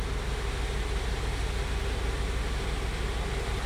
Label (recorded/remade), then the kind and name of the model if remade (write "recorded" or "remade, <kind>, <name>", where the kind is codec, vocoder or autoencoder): recorded